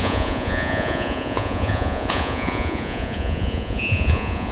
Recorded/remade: remade